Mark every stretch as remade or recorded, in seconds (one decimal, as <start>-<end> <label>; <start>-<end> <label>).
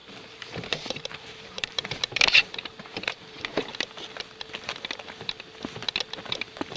0.0-3.5 remade; 3.5-6.3 recorded; 6.3-6.8 remade